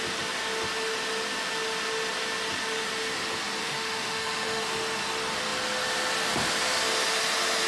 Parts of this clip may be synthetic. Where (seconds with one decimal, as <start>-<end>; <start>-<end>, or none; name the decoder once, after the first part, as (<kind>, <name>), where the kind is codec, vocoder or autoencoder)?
3.6-4.7 (autoencoder, DAC-VAE)